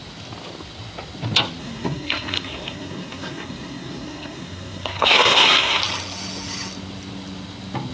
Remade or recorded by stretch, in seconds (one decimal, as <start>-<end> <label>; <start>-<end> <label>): 0.0-1.6 recorded; 1.6-5.8 remade; 5.8-7.9 recorded